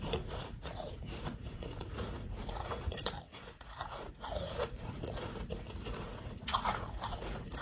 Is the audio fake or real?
fake